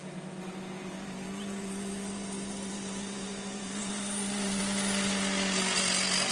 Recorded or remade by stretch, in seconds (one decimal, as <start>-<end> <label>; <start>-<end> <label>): 0.0-0.8 recorded; 0.8-4.6 remade; 4.6-6.3 recorded